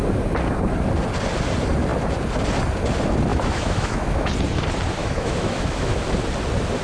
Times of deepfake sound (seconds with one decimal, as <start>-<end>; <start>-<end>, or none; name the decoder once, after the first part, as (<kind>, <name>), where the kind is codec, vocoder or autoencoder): 3.3-4.3 (autoencoder, DAC-VAE); 5.0-6.0